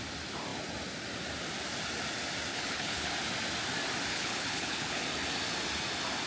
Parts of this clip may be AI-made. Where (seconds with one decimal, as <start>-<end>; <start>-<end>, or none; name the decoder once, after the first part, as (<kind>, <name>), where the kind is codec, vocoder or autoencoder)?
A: 2.5-3.1 (codec, HILCodec); 4.1-5.0